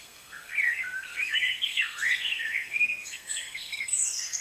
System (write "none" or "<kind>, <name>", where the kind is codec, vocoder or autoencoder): codec, SNAC